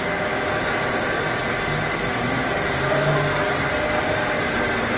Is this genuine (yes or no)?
yes